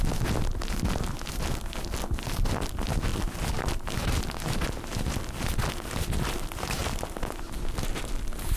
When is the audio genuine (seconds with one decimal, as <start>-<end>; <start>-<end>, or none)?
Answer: 0.0-3.1; 4.7-6.8; 8.0-8.6